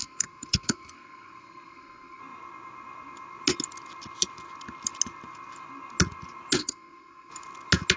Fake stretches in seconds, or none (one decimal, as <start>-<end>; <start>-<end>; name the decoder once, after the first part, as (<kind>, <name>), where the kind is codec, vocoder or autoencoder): 0.0-2.2 (codec, SNAC); 6.6-7.3